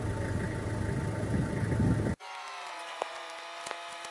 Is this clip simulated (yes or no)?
no